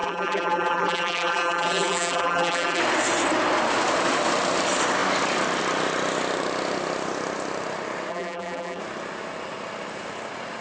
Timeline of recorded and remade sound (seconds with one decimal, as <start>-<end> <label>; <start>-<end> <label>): 0.0-2.8 remade; 2.8-8.1 recorded; 8.1-8.8 remade; 8.8-10.6 recorded